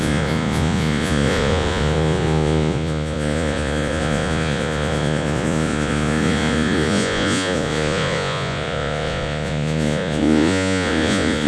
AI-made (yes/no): yes